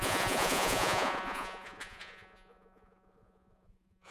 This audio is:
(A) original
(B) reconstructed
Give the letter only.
B